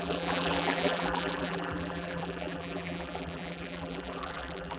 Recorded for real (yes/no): no